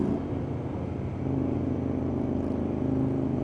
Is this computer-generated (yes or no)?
no